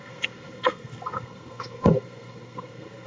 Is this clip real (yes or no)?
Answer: no